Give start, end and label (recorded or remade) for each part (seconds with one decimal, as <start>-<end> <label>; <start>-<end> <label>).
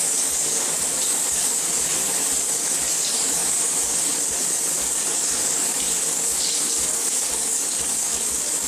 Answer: 0.0-8.7 remade